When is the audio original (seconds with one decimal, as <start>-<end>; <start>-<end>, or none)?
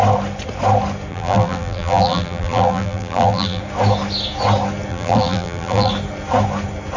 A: 0.0-1.1; 3.6-4.9; 5.9-7.0